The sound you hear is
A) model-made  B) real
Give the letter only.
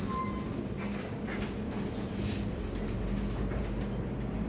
B